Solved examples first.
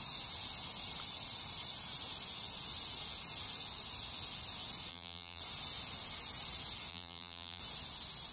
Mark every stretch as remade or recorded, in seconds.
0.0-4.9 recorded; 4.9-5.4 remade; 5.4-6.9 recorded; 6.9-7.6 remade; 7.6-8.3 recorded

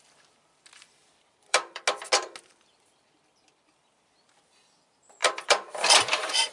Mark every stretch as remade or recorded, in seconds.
0.0-1.0 recorded; 1.0-1.8 remade; 1.8-5.2 recorded; 5.2-6.5 remade

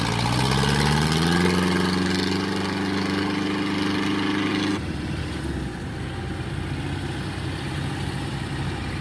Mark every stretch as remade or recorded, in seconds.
0.0-9.0 recorded